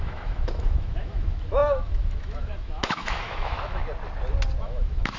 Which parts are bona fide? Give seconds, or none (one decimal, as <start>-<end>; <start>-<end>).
3.8-4.6